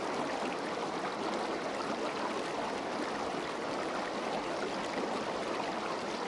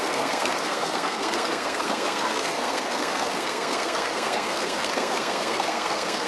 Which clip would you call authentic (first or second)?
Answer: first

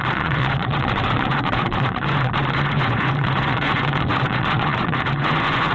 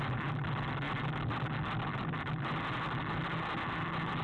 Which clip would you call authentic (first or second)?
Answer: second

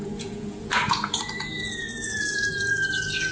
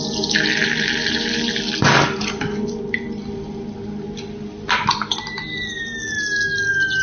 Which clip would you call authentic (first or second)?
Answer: second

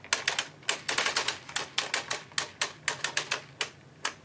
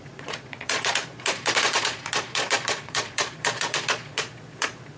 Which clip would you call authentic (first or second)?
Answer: first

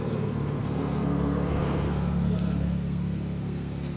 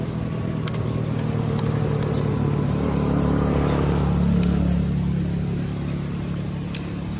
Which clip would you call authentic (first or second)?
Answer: second